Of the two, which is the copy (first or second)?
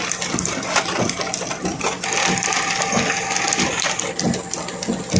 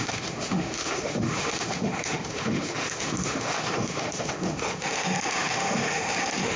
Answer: second